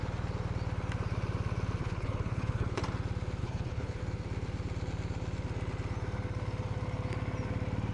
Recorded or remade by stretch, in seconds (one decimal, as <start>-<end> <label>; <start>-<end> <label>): 0.0-1.8 recorded; 1.8-2.8 remade; 2.8-3.4 recorded; 3.4-4.0 remade; 4.0-7.9 recorded